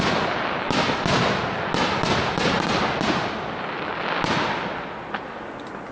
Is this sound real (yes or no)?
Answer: yes